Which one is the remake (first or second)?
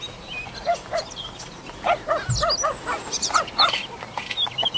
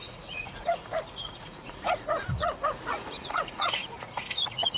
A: second